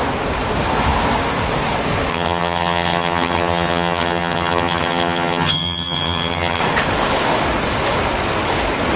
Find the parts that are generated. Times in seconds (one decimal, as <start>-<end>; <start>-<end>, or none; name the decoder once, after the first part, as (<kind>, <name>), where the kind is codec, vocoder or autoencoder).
2.1-6.6 (vocoder, HiFi-GAN)